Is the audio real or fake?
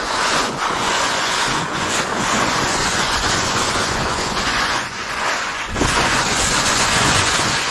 fake